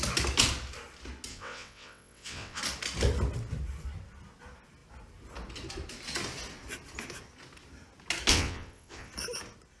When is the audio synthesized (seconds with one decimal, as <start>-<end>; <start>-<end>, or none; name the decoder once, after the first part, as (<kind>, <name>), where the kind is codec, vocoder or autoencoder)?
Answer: 1.3-2.6 (vocoder, WaveNeXt); 8.3-9.1

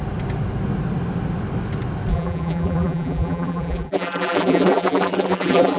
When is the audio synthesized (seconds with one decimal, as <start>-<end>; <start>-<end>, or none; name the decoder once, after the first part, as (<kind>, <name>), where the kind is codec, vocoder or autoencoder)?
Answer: 2.1-5.8 (vocoder, BigVGAN v2)